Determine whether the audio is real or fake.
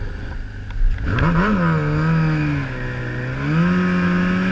real